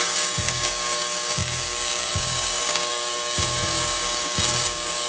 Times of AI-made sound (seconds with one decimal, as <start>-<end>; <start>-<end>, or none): 0.0-5.1